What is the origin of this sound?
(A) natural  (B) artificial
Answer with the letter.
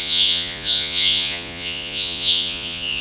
B